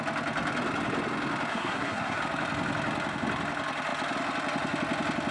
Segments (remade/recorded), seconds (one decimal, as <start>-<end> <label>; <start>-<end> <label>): 0.0-1.5 recorded; 1.5-2.2 remade; 2.2-5.3 recorded